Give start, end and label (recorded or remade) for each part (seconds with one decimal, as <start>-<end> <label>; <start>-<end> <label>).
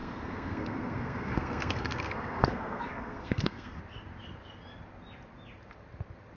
0.0-3.8 remade; 3.8-6.4 recorded